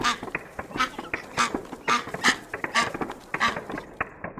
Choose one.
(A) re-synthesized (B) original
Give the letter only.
B